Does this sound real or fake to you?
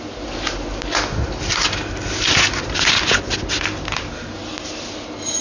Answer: real